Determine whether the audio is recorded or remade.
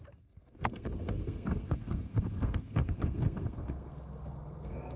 remade